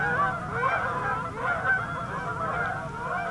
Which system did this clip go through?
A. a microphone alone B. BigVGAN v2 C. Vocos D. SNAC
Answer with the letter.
A